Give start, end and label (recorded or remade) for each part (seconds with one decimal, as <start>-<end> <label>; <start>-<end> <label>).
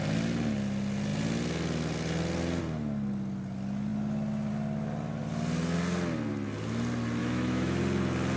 0.0-7.2 recorded; 7.2-7.8 remade; 7.8-8.4 recorded